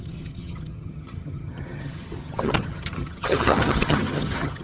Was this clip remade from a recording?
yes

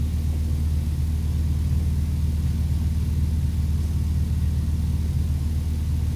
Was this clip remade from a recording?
no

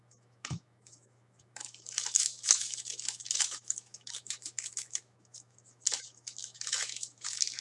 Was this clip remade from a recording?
yes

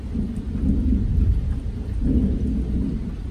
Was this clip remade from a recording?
no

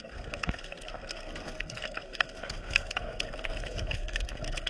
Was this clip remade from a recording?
yes